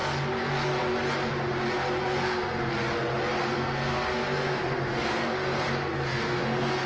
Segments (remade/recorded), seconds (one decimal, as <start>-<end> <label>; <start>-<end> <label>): 0.0-2.0 recorded; 2.0-2.7 remade; 2.7-3.4 recorded; 3.4-6.9 remade